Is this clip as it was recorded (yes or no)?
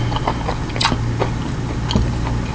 yes